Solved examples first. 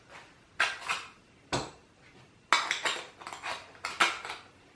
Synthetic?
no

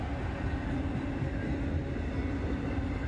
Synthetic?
yes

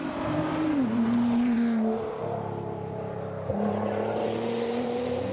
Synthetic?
yes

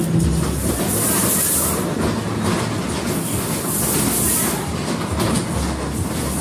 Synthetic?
no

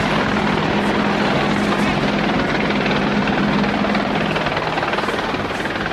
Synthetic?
no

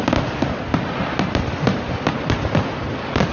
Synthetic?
no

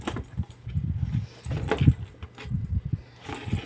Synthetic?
no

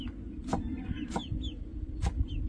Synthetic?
no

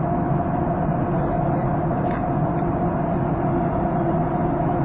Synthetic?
no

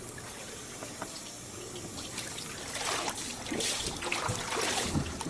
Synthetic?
no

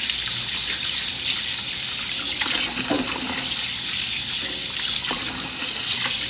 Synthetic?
no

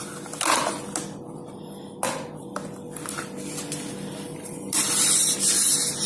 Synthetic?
no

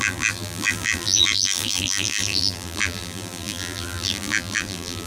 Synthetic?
yes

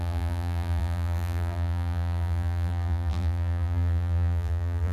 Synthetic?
yes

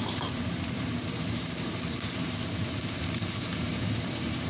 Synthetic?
yes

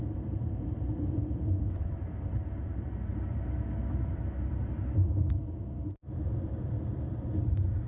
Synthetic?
yes